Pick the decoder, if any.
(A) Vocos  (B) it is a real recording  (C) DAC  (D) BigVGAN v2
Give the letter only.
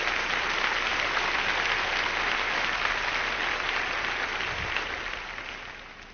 B